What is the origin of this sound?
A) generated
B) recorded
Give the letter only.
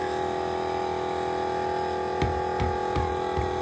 B